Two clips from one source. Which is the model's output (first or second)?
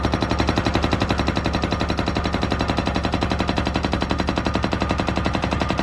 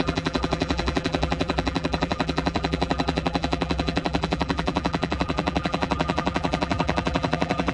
second